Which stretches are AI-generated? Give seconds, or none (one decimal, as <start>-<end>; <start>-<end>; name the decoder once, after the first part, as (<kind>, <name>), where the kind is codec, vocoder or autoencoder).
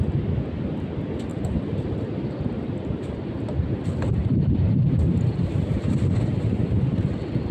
1.3-3.3 (vocoder, BigVGAN v2); 4.2-6.2